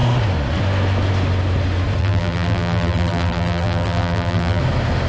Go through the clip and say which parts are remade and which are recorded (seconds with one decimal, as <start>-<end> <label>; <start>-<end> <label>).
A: 0.0-2.0 recorded; 2.0-4.6 remade; 4.6-5.1 recorded